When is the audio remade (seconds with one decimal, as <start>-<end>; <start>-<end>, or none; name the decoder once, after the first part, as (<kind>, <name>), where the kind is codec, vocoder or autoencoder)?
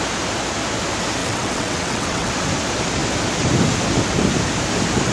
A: 1.2-2.3 (vocoder, WaveNeXt)